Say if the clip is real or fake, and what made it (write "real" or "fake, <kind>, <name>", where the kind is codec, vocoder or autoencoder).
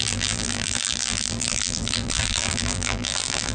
fake, vocoder, BigVGAN v2